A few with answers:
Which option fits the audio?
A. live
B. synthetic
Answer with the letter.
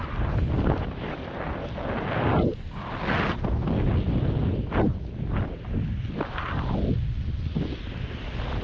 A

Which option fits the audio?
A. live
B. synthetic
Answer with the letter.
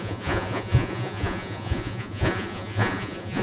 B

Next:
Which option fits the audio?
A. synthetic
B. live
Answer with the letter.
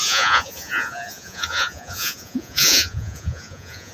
A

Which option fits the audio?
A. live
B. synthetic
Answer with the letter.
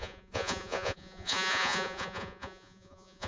B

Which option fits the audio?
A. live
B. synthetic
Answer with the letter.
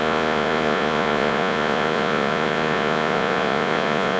B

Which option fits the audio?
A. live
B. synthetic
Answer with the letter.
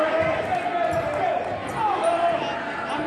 A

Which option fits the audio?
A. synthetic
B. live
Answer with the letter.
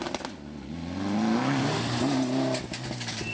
B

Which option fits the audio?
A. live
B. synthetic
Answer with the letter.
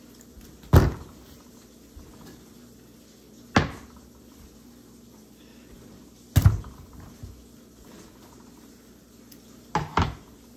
A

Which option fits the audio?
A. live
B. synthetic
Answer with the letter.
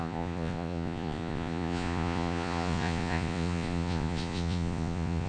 B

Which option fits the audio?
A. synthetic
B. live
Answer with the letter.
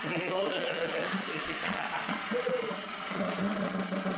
A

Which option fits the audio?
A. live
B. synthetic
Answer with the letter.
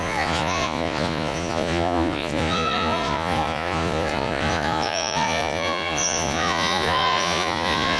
B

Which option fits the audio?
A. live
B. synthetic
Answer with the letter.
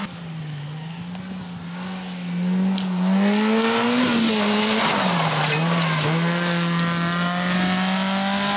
A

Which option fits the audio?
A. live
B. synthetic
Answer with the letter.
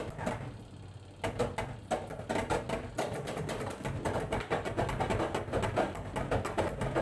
A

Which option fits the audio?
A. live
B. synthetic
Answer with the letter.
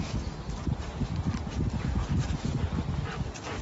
A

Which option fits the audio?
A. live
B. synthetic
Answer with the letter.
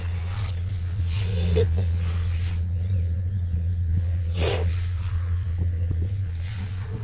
B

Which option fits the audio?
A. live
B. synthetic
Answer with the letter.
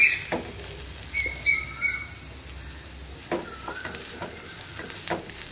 A